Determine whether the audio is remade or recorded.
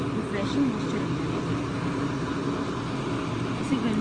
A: recorded